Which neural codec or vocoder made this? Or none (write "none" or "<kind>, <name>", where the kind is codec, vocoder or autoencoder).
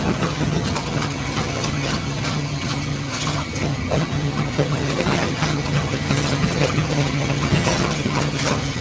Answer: vocoder, HiFi-GAN